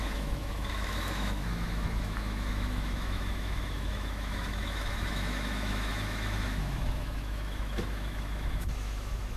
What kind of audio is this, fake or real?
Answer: fake